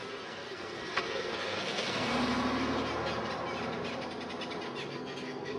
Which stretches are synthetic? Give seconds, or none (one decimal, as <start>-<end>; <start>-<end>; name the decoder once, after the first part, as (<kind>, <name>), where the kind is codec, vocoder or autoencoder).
0.0-2.1 (codec, SNAC); 4.9-5.6